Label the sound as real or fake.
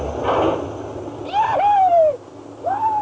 real